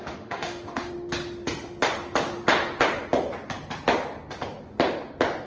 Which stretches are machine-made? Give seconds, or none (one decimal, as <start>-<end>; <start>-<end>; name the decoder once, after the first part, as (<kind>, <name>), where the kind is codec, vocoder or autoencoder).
0.0-0.9 (autoencoder, DAC-VAE)